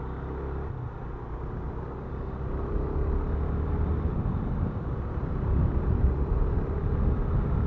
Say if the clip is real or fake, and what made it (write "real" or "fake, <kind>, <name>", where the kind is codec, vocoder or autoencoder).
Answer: real